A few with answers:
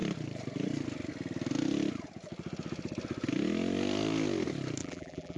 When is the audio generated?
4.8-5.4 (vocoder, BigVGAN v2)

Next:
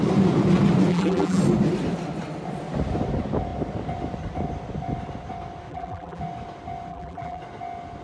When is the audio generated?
0.9-1.4 (vocoder, BigVGAN v2); 5.7-6.2; 6.9-7.4

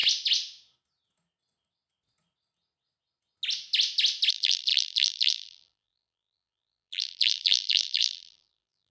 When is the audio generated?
4.3-8.9 (vocoder, BigVGAN v2)